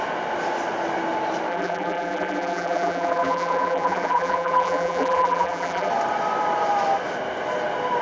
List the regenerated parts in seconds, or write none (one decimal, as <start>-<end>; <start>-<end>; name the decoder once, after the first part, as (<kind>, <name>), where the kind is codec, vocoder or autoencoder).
1.5-5.9 (vocoder, BigVGAN v2)